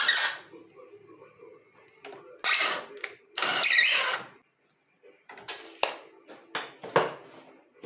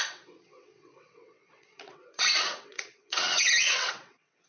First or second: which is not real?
second